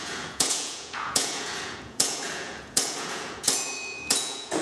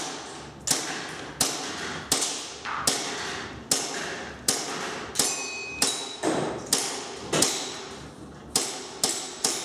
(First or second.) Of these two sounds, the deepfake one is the first